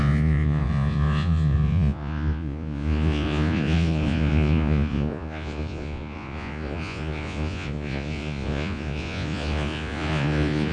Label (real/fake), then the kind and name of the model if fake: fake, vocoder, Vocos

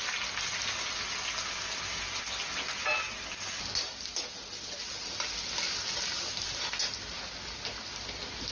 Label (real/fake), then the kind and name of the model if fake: real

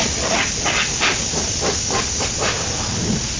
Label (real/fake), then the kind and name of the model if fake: real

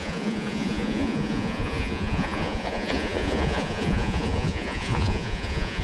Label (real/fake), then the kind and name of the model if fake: fake, vocoder, Vocos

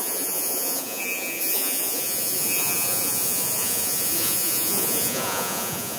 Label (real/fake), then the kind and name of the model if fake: fake, vocoder, Vocos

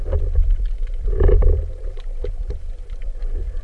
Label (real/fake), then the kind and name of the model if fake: fake, vocoder, BigVGAN v2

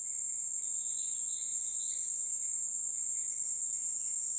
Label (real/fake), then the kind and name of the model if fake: real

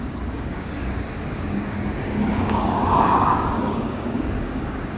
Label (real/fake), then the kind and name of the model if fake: fake, codec, DAC